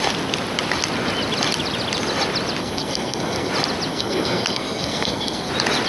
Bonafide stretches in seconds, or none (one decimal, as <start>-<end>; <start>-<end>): 0.0-2.6; 3.5-3.9; 5.5-5.9